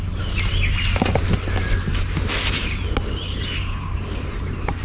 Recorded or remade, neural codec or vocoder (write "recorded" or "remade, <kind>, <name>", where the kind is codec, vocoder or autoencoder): recorded